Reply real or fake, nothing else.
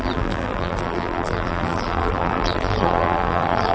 fake